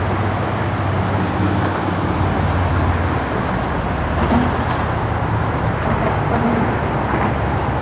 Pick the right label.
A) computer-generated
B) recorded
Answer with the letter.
B